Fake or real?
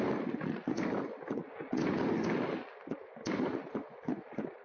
real